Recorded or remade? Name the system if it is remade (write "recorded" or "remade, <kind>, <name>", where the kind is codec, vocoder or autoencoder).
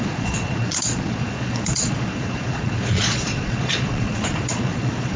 remade, vocoder, Vocos